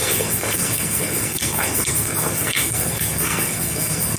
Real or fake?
fake